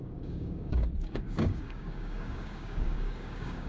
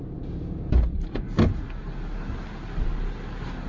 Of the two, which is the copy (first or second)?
first